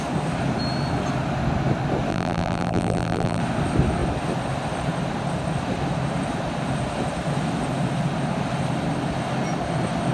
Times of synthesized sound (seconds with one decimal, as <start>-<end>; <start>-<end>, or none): 2.1-3.4